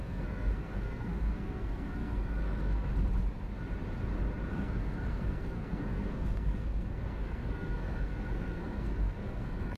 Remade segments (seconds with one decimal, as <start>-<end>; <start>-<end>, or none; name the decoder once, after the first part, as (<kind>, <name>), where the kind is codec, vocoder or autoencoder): 0.0-2.9 (codec, SNAC); 4.5-9.8